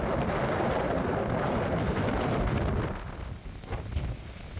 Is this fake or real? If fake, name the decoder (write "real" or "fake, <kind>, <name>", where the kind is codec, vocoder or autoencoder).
real